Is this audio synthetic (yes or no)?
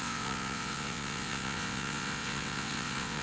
yes